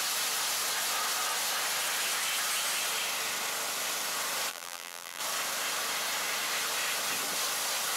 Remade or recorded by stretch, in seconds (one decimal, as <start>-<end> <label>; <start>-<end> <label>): 0.0-4.5 recorded; 4.5-5.2 remade; 5.2-8.0 recorded